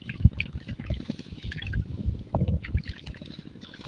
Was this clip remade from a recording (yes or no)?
yes